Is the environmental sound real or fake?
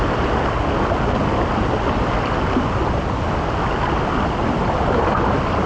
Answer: real